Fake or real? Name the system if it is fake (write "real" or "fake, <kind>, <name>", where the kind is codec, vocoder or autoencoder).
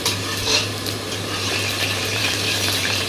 fake, vocoder, BigVGAN v2